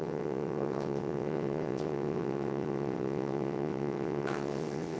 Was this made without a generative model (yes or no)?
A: no